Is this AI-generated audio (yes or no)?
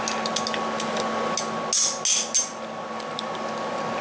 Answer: no